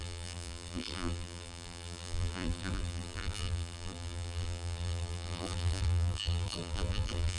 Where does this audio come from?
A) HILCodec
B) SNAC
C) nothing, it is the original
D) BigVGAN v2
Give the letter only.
D